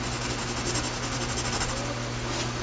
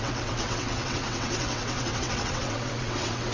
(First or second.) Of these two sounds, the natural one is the first